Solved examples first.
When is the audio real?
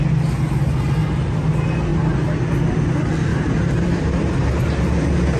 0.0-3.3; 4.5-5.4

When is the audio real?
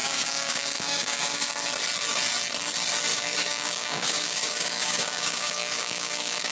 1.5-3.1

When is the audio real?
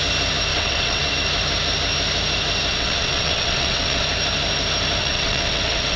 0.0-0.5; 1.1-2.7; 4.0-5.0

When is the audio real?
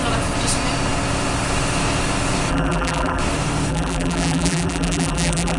0.0-2.5; 3.2-3.7